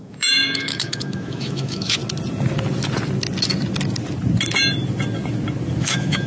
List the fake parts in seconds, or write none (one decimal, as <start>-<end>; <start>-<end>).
0.0-2.0; 5.8-6.3

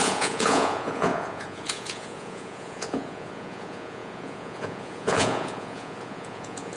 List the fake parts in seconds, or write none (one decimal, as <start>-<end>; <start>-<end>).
0.0-6.8

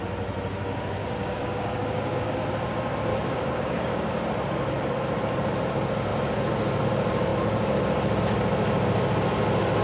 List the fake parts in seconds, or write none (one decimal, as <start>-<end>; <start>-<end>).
1.0-2.3; 3.1-4.1

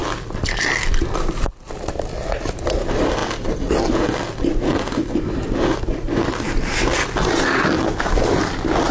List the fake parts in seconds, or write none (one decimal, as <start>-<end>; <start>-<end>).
0.0-1.5

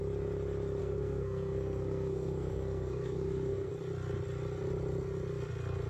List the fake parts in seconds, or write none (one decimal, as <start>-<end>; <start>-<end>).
0.8-3.7

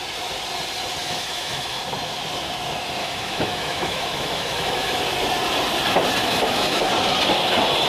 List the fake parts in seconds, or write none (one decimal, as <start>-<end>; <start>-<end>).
1.0-1.8; 3.0-5.0; 6.2-6.9